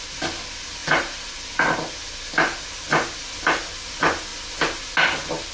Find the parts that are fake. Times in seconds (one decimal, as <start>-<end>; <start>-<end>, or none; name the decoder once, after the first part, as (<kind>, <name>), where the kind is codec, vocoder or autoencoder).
0.8-1.9 (vocoder, BigVGAN v2)